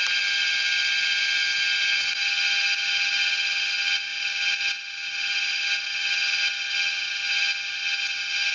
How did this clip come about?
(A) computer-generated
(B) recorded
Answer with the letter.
B